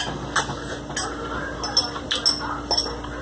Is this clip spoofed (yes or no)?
no